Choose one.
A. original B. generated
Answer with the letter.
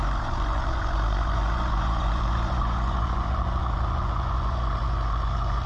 B